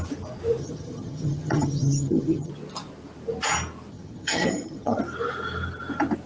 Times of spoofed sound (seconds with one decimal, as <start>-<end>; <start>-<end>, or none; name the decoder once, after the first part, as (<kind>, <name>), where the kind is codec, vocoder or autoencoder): 0.6-2.5 (vocoder, HiFi-GAN); 3.9-5.0